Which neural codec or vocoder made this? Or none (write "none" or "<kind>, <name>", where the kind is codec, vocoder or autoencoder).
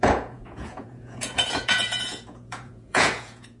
vocoder, Vocos